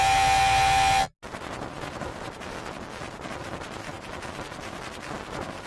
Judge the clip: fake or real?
real